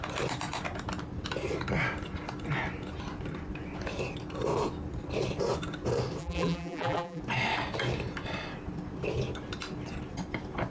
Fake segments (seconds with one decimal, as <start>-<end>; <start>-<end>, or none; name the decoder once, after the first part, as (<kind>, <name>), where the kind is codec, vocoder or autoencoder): 6.2-7.2 (vocoder, BigVGAN v2)